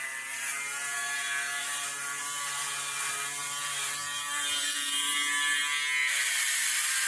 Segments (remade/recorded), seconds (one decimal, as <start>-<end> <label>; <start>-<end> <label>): 0.0-1.6 recorded; 1.6-2.2 remade; 2.2-3.4 recorded; 3.4-5.1 remade; 5.1-7.1 recorded